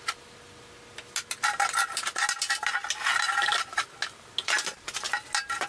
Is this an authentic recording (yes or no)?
yes